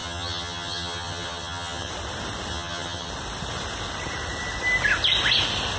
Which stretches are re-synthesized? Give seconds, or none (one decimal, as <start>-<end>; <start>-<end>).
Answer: 0.0-1.9; 2.5-3.1